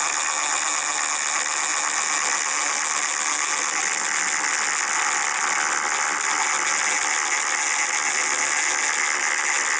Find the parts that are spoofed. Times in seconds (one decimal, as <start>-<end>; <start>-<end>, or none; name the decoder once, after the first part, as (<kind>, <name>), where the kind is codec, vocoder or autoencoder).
none